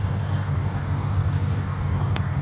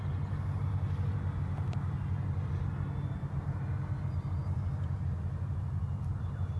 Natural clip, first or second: second